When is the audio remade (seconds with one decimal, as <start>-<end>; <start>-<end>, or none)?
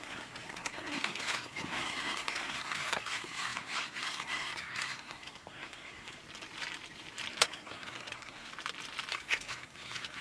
0.0-6.2; 7.3-8.5; 9.1-10.2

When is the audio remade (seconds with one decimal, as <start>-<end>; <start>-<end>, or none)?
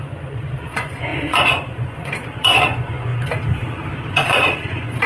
0.0-3.1; 4.1-5.1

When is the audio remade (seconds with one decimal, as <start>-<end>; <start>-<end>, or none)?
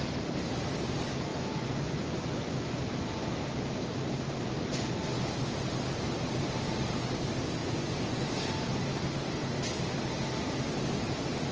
1.3-2.8; 7.6-8.3